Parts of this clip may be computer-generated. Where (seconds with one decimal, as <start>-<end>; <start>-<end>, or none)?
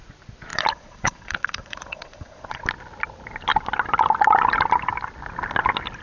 0.5-2.6